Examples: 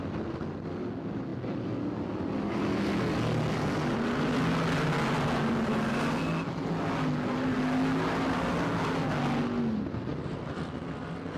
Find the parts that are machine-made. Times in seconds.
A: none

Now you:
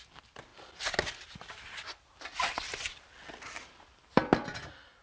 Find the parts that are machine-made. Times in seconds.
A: 0.0-0.5 (vocoder, BigVGAN v2); 3.4-4.2